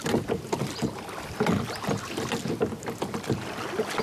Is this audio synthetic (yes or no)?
no